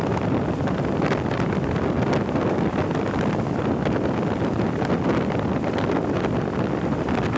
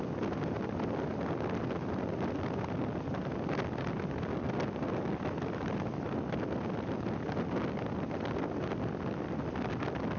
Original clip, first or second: second